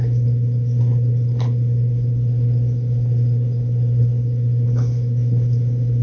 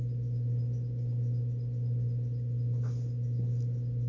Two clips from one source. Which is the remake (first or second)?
first